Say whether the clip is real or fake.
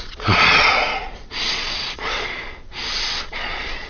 fake